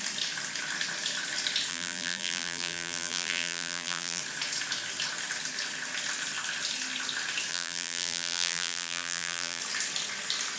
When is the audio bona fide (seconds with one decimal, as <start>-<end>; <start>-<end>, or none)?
0.0-1.7; 4.2-7.5; 9.6-10.6